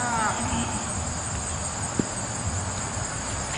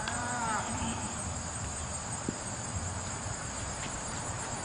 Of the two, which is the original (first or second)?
first